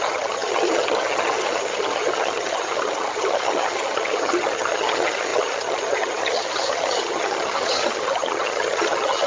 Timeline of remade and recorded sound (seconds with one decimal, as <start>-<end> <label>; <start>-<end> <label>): 0.0-9.3 remade